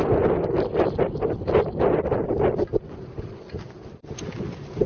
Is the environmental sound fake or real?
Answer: real